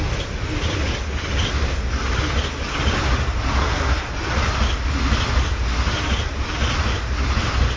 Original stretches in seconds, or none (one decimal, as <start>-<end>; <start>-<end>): 0.0-3.6; 4.1-7.8